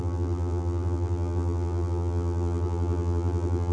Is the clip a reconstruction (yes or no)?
yes